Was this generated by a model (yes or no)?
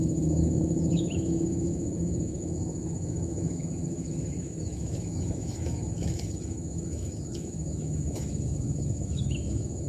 yes